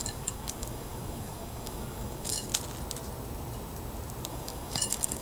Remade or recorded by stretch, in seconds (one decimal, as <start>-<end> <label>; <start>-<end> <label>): 0.0-2.5 remade; 2.5-4.3 recorded; 4.3-5.2 remade